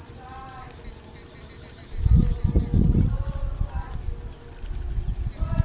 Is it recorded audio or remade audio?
recorded